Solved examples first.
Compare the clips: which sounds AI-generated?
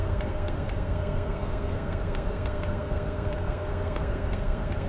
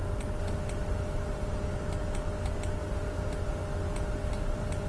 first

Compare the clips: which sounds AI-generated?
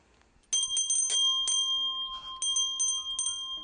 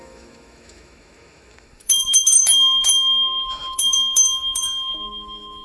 second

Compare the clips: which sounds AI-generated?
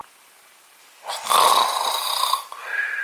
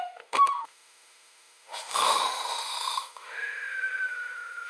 second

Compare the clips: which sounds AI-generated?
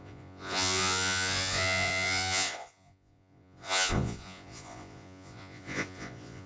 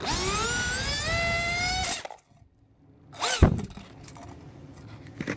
first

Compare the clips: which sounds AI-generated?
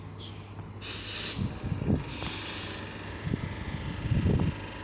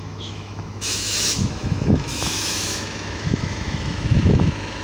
second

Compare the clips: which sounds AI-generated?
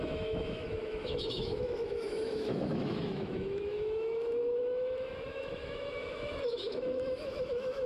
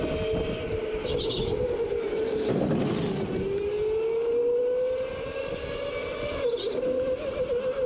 first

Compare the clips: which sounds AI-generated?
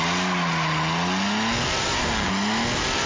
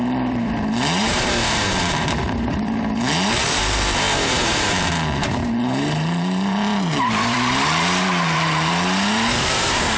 second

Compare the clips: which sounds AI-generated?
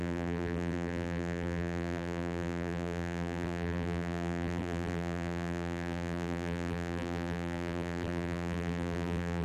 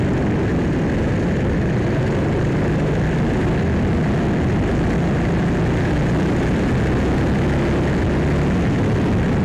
first